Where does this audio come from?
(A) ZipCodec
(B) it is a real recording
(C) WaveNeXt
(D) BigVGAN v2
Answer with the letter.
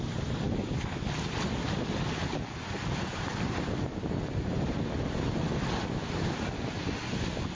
B